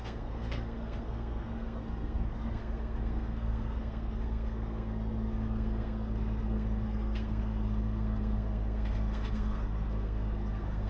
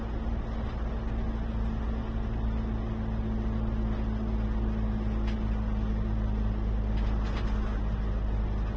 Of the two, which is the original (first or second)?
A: second